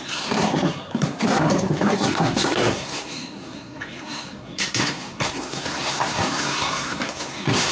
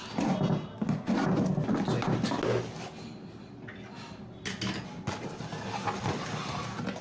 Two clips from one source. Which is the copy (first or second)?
first